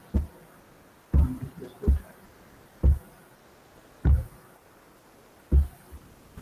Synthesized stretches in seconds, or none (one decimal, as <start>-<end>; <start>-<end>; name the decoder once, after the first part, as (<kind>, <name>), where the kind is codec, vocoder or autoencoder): none